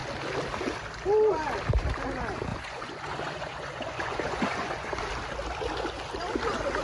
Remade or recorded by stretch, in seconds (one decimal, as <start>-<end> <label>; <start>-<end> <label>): 0.0-2.5 recorded; 2.5-5.0 remade; 5.0-6.8 recorded